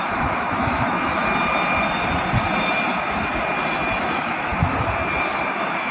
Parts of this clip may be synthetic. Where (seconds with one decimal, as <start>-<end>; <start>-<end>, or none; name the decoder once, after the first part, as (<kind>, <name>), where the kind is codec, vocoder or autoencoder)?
0.0-1.2 (autoencoder, DAC-VAE); 4.0-4.5; 5.5-5.9